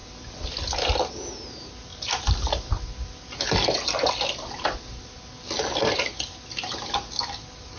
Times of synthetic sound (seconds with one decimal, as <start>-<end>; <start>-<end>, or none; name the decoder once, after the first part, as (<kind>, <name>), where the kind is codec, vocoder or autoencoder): 1.9-2.8 (vocoder, BigVGAN v2)